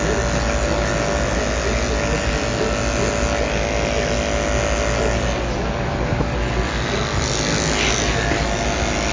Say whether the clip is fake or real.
real